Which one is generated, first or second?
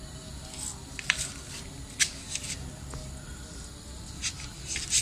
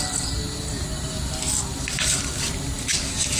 second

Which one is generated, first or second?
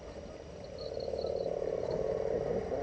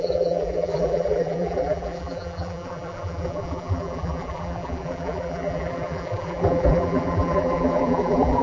second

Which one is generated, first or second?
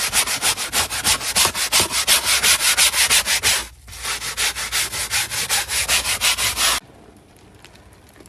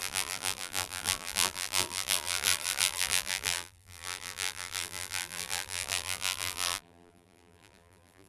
second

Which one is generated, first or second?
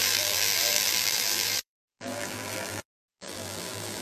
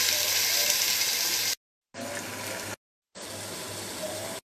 first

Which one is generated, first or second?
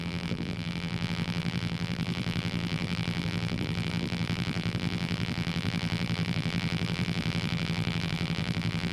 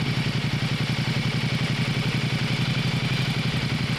first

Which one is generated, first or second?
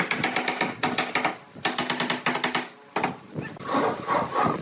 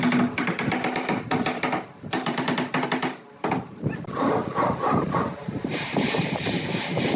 second